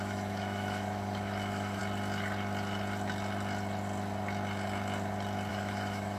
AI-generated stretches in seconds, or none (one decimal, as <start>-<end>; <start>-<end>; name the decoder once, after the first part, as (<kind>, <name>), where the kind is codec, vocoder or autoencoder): 0.0-1.8 (autoencoder, DAC-VAE); 5.5-6.2